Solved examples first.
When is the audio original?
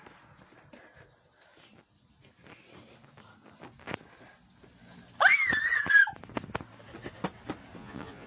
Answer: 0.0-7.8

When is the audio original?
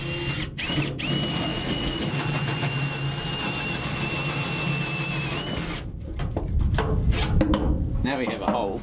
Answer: 0.0-1.5; 2.0-8.8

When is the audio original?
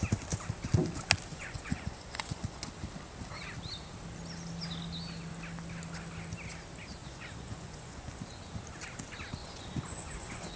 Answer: 0.0-1.3; 2.6-7.0; 8.2-9.4